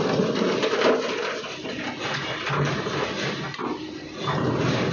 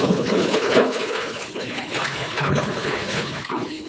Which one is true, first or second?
first